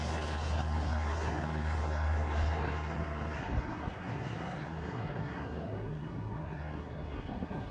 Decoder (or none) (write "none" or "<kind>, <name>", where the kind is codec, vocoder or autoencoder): codec, SNAC